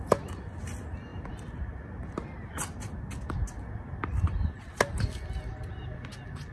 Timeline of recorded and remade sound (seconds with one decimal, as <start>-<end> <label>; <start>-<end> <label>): 0.0-6.5 recorded